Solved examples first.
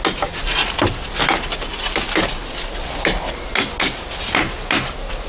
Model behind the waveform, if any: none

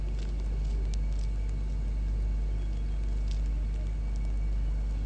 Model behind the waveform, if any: none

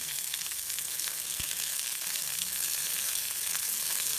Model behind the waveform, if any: codec, SNAC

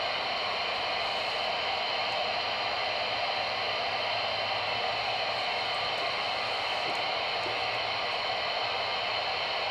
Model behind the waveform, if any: none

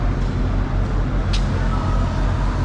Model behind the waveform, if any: none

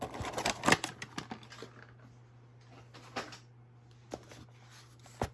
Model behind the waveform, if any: none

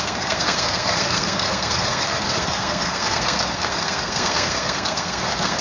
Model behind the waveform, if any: codec, SNAC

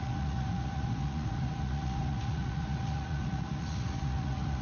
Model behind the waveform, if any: vocoder, Vocos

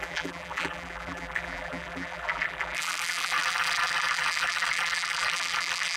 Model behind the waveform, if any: vocoder, BigVGAN v2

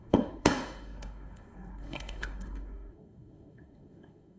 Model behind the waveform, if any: codec, SNAC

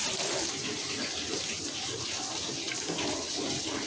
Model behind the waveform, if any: none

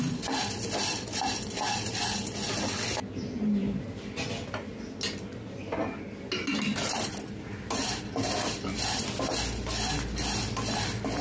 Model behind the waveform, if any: none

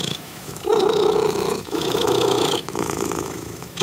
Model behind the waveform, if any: autoencoder, DAC-VAE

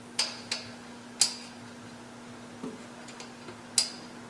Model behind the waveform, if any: none